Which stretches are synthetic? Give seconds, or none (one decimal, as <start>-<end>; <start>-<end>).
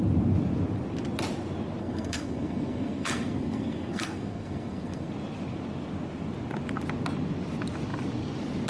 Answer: 1.8-5.1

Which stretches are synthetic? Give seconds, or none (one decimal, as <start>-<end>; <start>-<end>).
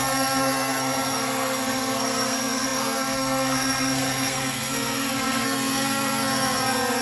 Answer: 0.0-7.0